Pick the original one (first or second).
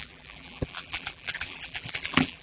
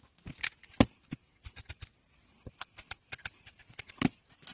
second